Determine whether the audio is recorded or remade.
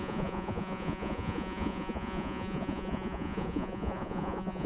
remade